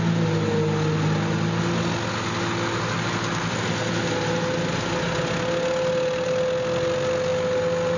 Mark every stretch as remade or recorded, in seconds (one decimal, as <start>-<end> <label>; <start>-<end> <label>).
0.0-8.0 recorded